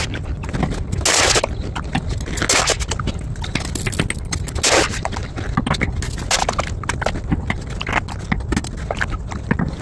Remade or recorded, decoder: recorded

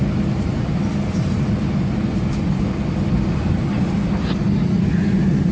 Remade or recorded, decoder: recorded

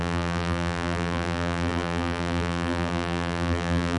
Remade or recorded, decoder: remade, vocoder, BigVGAN v2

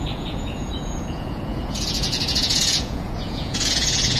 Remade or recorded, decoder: remade, vocoder, Vocos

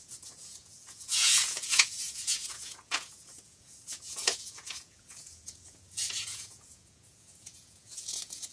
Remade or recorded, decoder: remade, vocoder, Vocos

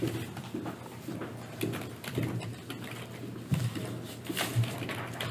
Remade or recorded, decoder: recorded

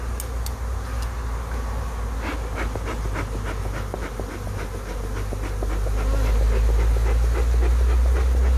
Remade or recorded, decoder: recorded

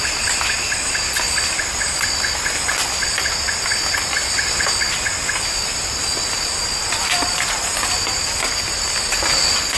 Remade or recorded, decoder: recorded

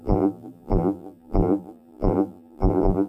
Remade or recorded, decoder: remade, vocoder, BigVGAN v2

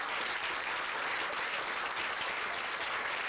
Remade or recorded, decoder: recorded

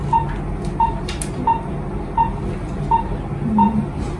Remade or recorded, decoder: recorded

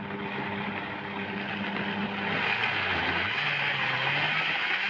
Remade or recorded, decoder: recorded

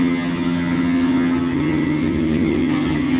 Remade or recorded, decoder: remade, vocoder, HiFi-GAN